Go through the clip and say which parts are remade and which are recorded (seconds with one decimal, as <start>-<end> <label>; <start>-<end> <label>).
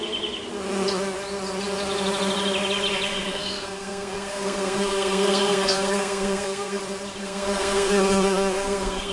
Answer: 0.0-3.1 recorded; 3.1-6.8 remade; 6.8-7.2 recorded; 7.2-9.1 remade